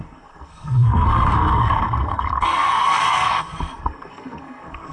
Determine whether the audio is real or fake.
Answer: fake